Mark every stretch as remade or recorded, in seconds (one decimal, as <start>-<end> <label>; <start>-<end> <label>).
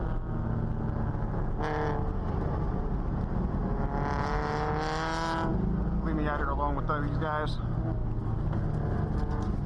0.0-9.7 recorded